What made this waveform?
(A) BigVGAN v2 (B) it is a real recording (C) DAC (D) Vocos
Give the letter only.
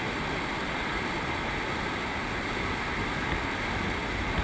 B